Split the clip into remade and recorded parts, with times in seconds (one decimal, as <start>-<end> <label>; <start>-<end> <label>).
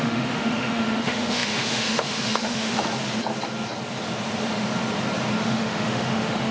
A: 0.0-2.9 remade; 2.9-5.4 recorded; 5.4-6.5 remade